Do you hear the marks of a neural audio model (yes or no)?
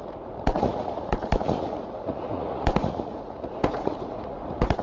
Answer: yes